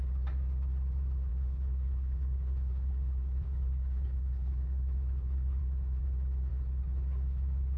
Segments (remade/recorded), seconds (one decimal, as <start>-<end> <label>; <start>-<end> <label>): 0.0-1.3 recorded; 1.3-5.6 remade; 5.6-6.5 recorded; 6.5-7.8 remade